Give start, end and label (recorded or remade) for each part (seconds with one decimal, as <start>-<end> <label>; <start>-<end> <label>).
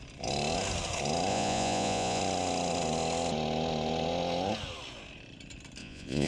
0.0-1.3 recorded; 1.3-2.2 remade; 2.2-5.8 recorded; 5.8-6.3 remade